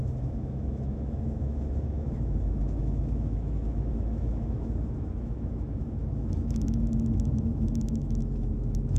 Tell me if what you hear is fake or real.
fake